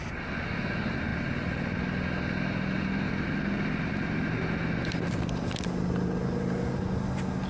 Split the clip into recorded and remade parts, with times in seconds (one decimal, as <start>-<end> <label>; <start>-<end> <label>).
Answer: 0.0-7.5 recorded